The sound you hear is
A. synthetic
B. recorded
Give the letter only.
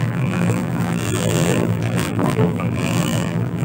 A